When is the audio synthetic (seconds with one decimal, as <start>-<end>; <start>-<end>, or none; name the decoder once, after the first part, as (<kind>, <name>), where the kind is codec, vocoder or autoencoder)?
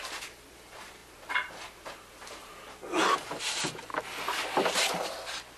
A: 0.0-3.9 (vocoder, BigVGAN v2)